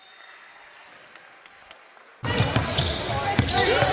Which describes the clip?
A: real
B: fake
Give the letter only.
A